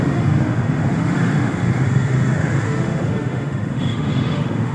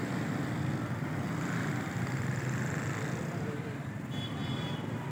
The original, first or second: second